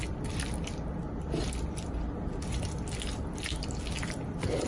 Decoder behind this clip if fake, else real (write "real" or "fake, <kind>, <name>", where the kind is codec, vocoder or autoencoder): real